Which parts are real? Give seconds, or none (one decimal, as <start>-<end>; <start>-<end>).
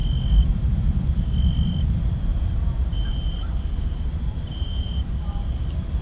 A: 0.0-2.3